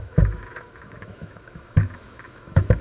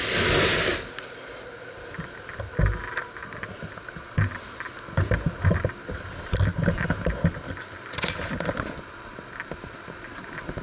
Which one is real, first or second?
second